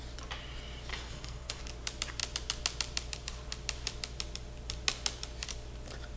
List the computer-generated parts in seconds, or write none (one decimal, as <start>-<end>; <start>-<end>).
0.9-1.6